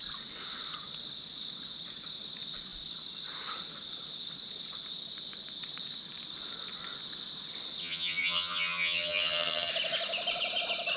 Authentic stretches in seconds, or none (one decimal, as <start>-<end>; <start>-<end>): 0.0-7.8; 9.7-11.0